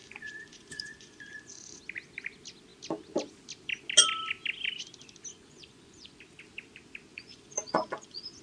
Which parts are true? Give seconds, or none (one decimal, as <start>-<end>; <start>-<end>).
1.8-5.3; 6.2-7.1